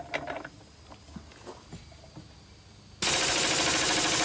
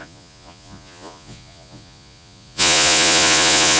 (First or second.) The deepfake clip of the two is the second